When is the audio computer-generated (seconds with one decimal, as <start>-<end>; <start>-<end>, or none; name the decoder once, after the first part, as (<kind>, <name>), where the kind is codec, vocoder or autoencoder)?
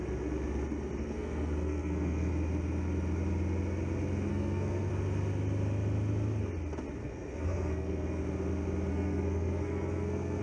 1.0-2.3 (codec, SNAC); 4.3-4.9; 7.0-8.2; 8.9-10.4